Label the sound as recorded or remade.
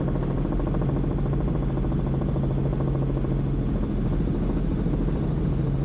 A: recorded